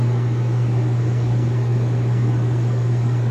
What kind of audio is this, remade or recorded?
remade